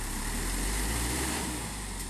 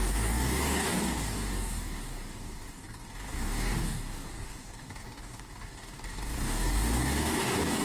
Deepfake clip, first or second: second